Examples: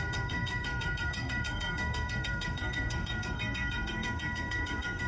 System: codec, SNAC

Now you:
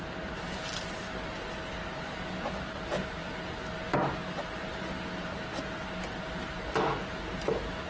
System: none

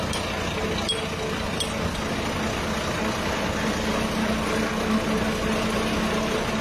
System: none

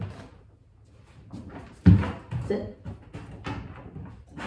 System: none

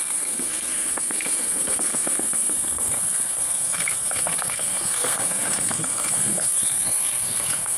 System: codec, SNAC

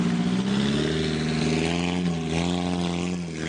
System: none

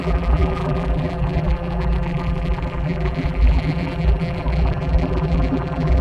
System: vocoder, BigVGAN v2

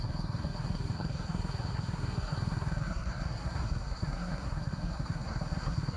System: codec, SNAC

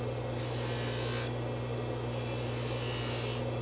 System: none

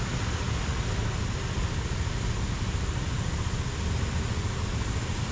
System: none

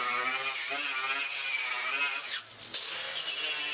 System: none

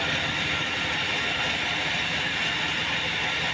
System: none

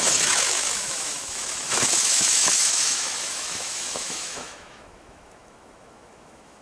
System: autoencoder, DAC-VAE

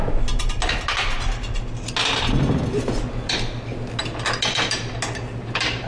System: none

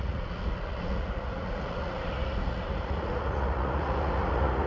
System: vocoder, Vocos